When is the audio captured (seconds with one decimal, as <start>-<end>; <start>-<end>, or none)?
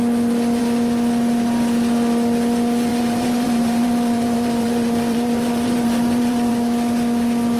0.0-2.9; 6.5-7.6